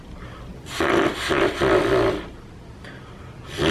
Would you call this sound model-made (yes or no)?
no